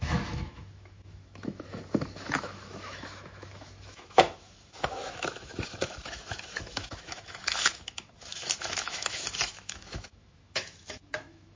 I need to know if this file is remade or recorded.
remade